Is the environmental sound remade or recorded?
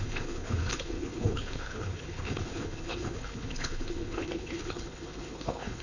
remade